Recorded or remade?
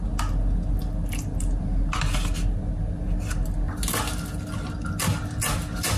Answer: recorded